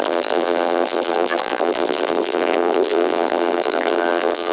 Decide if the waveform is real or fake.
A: fake